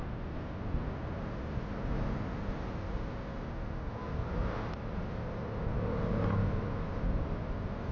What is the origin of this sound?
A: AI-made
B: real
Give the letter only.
B